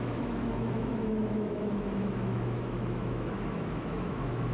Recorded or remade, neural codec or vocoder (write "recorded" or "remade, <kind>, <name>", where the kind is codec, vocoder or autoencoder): remade, autoencoder, DAC-VAE